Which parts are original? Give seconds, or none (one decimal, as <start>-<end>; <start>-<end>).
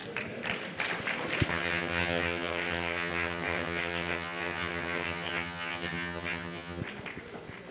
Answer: 0.0-1.5; 6.8-7.7